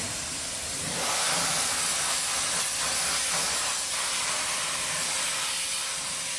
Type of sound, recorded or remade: recorded